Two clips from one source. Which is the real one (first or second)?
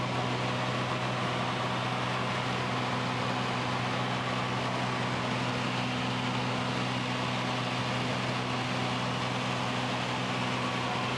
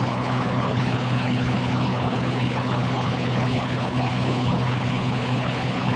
first